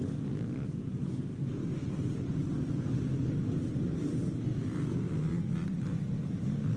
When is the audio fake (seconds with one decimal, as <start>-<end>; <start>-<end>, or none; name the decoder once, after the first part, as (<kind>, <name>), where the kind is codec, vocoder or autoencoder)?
none